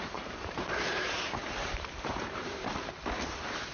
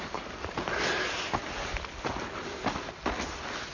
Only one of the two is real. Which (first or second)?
second